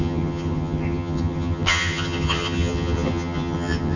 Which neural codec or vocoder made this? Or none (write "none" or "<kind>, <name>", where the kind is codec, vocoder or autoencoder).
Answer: vocoder, HiFi-GAN